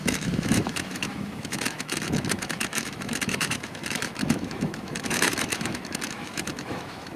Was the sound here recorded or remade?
remade